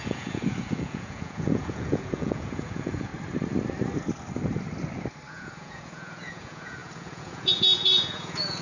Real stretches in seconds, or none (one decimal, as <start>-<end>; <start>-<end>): 3.1-5.3